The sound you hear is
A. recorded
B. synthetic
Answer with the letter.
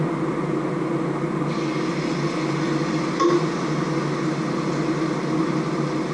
A